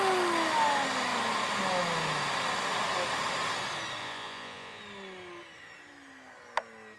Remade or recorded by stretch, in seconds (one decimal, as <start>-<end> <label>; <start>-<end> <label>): 0.0-4.0 recorded; 4.0-4.8 remade; 4.8-7.0 recorded